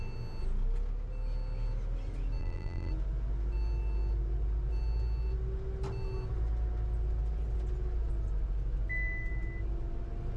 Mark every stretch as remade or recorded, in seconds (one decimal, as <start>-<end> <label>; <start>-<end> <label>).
0.0-2.4 recorded; 2.4-2.9 remade; 2.9-10.4 recorded